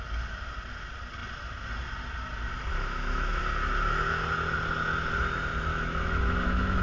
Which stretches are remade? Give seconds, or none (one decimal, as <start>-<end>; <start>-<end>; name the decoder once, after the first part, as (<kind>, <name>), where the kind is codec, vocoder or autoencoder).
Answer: 2.7-3.4 (autoencoder, DAC-VAE); 5.7-6.8